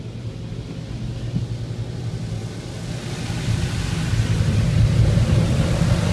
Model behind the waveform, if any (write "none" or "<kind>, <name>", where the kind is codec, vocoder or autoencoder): none